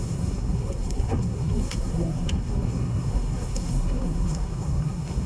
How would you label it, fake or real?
fake